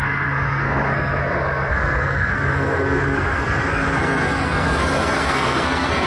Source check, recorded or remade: remade